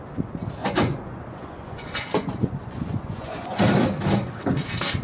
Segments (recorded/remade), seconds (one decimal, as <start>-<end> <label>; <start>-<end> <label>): 0.0-0.6 recorded; 0.6-3.6 remade; 3.6-5.0 recorded